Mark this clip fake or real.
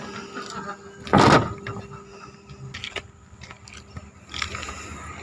real